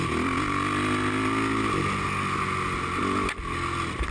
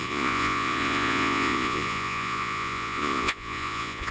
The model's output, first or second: second